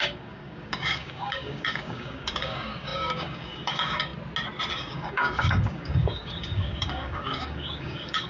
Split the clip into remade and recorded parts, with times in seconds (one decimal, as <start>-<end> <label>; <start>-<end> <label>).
0.0-4.1 remade; 4.1-4.7 recorded; 4.7-8.3 remade